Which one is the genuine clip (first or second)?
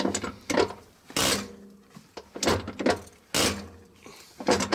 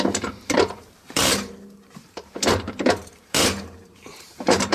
first